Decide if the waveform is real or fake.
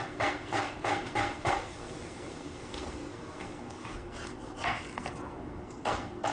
fake